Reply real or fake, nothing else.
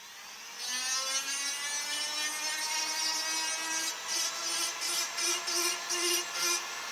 real